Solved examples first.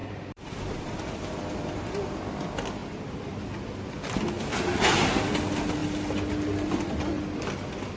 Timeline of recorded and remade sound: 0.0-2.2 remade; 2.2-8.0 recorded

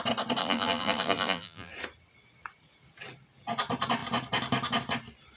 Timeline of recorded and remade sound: 0.0-0.4 recorded; 0.4-1.7 remade; 1.7-5.4 recorded

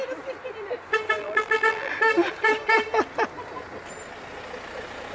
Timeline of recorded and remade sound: 0.0-1.2 recorded; 1.2-1.9 remade; 1.9-5.1 recorded